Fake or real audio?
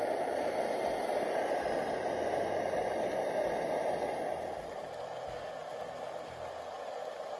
real